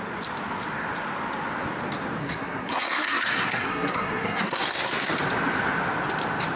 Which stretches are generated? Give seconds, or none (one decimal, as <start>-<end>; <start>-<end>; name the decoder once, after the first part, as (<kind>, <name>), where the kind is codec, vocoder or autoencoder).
2.2-5.1 (codec, SNAC)